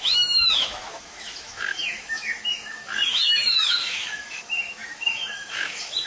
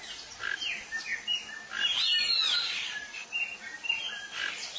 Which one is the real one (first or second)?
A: second